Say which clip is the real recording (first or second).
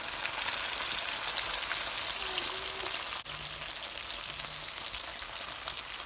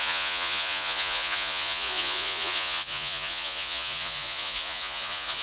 first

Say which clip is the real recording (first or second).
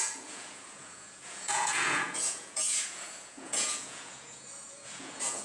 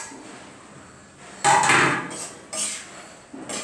second